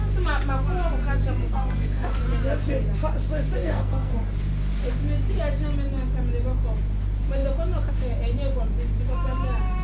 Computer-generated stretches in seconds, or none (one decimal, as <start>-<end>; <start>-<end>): 1.4-2.2; 3.6-4.1